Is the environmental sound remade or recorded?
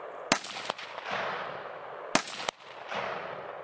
recorded